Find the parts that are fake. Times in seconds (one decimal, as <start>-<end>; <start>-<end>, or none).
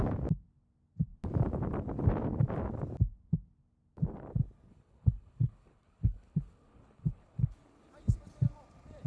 4.7-7.9